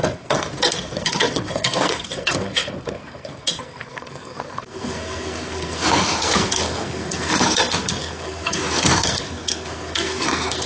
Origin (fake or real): fake